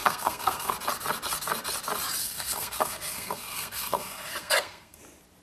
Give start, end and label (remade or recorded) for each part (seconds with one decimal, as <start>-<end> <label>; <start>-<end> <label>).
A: 0.0-0.7 remade; 0.7-2.2 recorded; 2.2-5.0 remade; 5.0-5.4 recorded